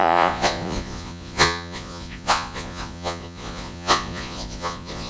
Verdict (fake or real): fake